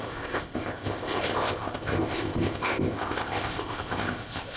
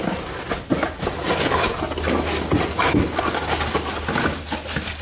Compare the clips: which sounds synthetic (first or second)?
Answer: first